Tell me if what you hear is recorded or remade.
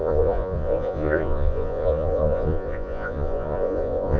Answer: remade